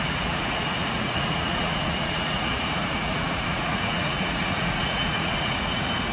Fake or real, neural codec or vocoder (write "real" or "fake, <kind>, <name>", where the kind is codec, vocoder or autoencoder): fake, vocoder, Vocos